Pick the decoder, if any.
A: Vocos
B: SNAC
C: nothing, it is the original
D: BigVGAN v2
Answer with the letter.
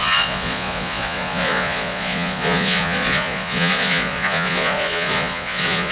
A